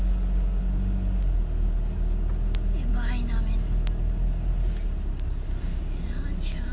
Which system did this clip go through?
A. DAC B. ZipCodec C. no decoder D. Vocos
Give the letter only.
C